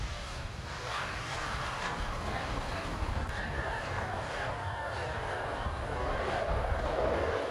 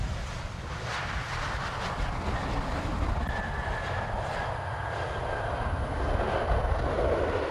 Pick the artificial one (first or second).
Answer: first